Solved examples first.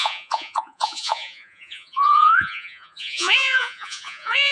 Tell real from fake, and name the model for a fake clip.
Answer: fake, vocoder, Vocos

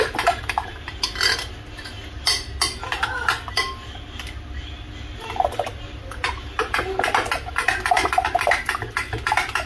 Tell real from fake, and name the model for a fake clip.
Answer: real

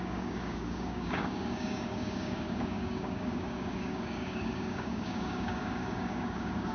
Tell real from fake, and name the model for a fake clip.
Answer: fake, codec, DAC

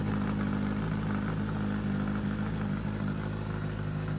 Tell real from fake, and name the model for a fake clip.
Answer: real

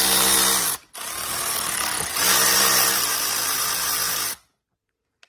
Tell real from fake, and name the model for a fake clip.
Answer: real